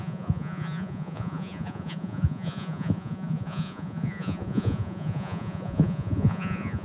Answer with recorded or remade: remade